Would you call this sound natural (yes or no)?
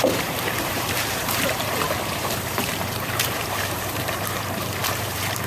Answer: no